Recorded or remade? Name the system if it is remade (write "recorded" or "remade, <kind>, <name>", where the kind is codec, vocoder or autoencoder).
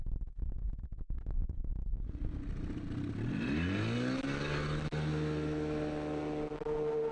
recorded